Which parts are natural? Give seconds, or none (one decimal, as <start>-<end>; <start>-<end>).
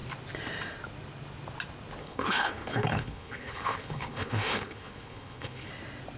0.0-2.0; 5.7-6.2